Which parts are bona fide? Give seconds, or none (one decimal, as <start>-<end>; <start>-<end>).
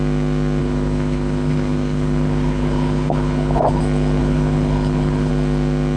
0.0-0.6; 3.8-4.2; 5.3-6.0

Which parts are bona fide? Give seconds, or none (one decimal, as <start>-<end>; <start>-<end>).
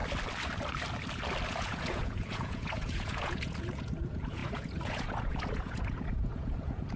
0.0-1.5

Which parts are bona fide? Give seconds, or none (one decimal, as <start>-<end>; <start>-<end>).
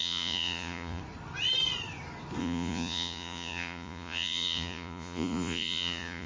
1.0-2.4